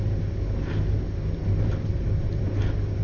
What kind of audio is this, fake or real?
real